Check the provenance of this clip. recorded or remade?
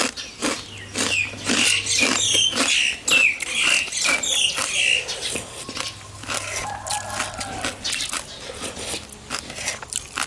recorded